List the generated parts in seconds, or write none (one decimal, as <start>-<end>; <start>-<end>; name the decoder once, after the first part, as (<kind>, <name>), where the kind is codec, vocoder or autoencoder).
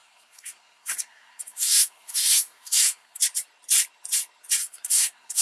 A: 0.0-3.2 (codec, SNAC); 4.6-5.4